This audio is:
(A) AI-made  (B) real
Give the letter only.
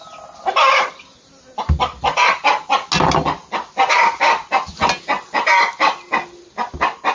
B